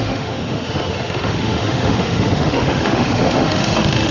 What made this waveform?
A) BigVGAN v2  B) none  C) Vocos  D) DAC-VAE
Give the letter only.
D